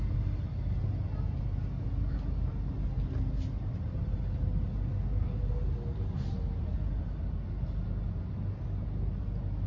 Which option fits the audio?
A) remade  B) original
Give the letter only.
B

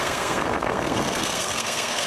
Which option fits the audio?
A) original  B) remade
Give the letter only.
B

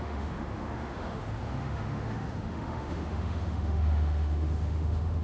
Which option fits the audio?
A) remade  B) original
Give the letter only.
A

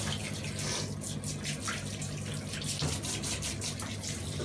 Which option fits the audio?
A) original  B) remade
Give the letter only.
A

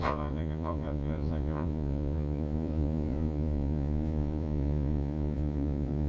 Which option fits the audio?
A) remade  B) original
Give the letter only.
A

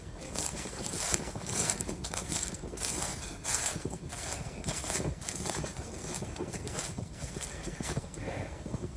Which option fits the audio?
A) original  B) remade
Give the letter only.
B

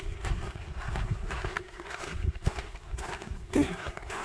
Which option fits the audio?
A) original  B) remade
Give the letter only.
B